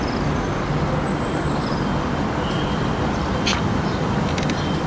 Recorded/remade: recorded